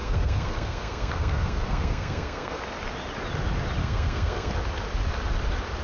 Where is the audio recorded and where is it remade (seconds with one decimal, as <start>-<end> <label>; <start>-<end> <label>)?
0.0-2.6 remade; 2.6-3.8 recorded; 3.8-4.5 remade; 4.5-5.8 recorded